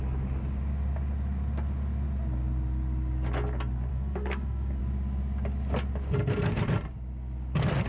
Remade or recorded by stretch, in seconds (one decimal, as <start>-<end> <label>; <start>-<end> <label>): 0.0-3.9 recorded; 3.9-4.8 remade; 4.8-7.9 recorded